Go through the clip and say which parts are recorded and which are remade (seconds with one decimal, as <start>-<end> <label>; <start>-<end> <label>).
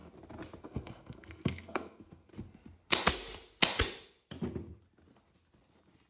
0.0-0.6 recorded; 0.6-2.3 remade; 2.3-6.1 recorded